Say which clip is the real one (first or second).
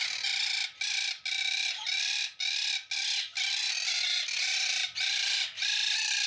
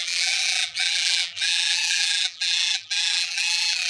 first